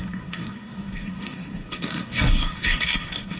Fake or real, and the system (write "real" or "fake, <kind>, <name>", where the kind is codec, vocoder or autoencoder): fake, codec, SNAC